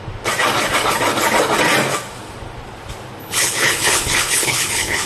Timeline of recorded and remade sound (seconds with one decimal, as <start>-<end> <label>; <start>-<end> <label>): 0.0-3.2 recorded; 3.2-5.1 remade